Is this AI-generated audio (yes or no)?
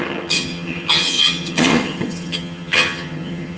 yes